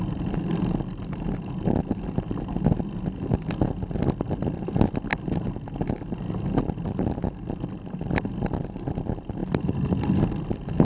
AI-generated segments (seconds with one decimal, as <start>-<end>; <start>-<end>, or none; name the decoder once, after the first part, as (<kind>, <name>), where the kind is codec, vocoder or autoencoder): none